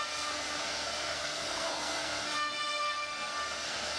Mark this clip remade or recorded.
remade